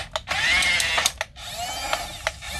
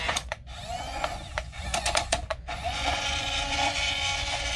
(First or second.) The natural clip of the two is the first